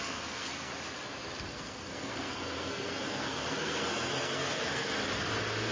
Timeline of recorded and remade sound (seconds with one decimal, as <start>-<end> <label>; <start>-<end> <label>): 0.0-0.7 remade; 0.7-1.4 recorded; 1.4-4.9 remade; 4.9-5.7 recorded